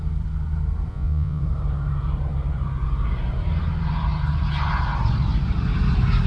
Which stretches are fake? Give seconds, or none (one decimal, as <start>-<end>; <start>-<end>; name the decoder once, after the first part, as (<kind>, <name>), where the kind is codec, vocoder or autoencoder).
0.9-1.4 (vocoder, Vocos)

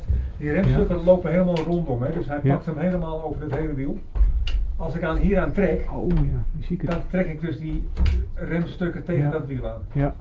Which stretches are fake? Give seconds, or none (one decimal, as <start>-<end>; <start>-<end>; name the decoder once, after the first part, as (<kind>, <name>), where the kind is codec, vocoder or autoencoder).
0.0-0.8 (vocoder, Vocos); 5.3-10.2

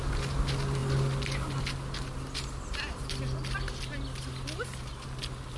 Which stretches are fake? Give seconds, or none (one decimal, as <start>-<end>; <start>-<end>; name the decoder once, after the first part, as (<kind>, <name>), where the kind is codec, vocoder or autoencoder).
none

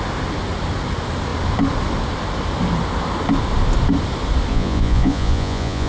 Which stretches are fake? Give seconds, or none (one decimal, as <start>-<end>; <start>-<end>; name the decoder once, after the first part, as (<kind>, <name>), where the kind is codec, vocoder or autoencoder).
4.5-5.9 (vocoder, Vocos)

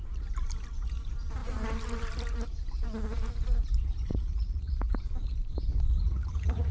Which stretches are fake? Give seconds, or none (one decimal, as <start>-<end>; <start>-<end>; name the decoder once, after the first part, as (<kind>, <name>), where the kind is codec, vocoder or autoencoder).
4.1-5.0 (vocoder, Vocos); 5.9-6.7